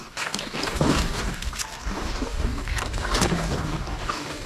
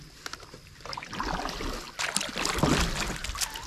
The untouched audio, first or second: second